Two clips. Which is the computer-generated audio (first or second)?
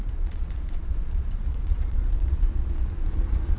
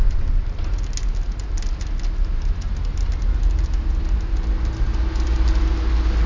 first